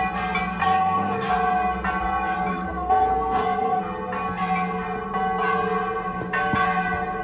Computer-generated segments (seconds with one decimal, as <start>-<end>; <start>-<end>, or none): 0.6-1.3; 2.5-3.8